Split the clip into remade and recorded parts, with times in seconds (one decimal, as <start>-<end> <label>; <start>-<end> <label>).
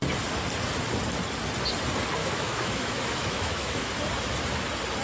0.0-2.2 recorded; 2.2-3.9 remade; 3.9-5.0 recorded